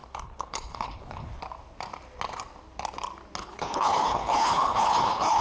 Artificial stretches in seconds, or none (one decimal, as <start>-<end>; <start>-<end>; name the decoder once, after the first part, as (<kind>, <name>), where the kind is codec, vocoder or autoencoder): 0.0-1.4 (codec, HILCodec); 3.4-5.4